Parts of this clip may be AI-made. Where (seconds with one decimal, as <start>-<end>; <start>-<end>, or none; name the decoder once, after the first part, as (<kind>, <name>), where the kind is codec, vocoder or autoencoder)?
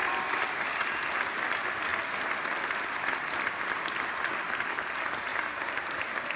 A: none